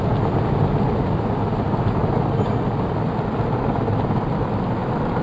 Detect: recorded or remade recorded